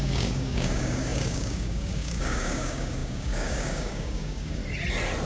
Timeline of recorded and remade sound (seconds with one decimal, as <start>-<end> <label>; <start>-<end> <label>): 0.0-4.6 remade; 4.6-5.3 recorded